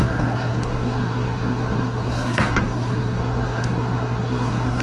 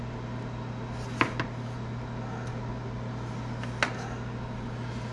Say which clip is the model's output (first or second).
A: first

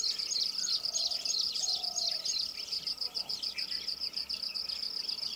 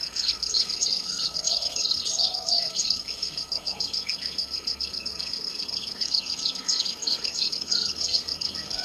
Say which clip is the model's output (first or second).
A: second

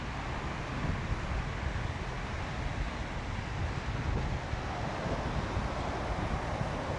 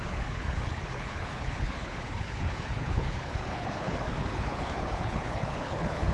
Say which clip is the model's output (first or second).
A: second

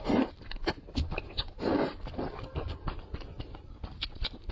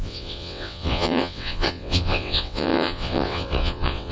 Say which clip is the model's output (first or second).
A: second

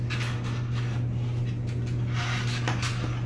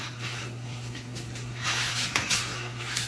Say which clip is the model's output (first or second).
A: second